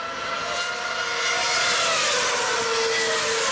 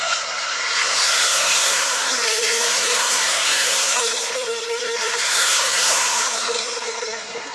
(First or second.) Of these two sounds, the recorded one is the first